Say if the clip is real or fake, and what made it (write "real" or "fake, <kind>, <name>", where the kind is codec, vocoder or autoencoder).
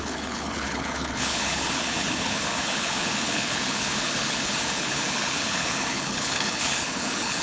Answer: fake, codec, HILCodec